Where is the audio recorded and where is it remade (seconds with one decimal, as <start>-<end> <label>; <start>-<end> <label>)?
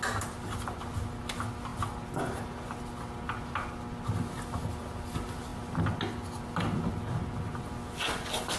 0.0-8.6 recorded